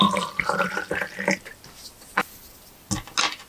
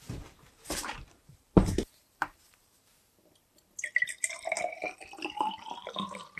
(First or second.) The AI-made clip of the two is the second